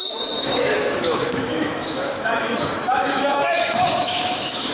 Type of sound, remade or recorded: remade